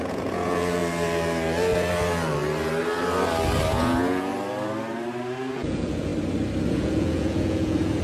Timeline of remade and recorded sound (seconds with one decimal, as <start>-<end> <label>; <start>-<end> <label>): 0.0-0.8 remade; 0.8-3.7 recorded; 3.7-4.3 remade; 4.3-5.5 recorded; 5.5-6.1 remade; 6.1-6.7 recorded; 6.7-8.0 remade

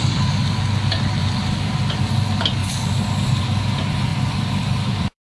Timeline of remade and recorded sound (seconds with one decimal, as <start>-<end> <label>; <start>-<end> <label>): 0.0-1.2 recorded; 1.2-2.0 remade; 2.0-2.6 recorded; 2.6-3.4 remade; 3.4-4.1 recorded; 4.1-5.3 remade

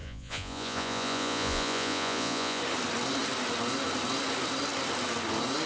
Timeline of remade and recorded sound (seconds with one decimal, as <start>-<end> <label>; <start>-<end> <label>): 0.0-2.6 remade; 2.6-5.7 recorded

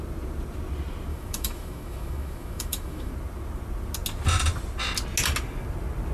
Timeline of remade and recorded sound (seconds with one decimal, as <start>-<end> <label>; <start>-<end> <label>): 0.0-1.1 recorded; 1.1-3.1 remade; 3.1-6.1 recorded

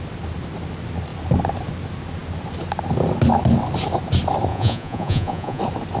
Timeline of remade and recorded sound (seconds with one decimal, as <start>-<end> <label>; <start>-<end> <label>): 0.0-4.5 recorded; 4.5-5.6 remade; 5.6-6.0 recorded

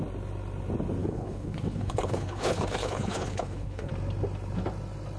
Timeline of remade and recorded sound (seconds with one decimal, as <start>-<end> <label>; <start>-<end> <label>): 0.0-1.0 recorded; 1.0-3.9 remade; 3.9-5.2 recorded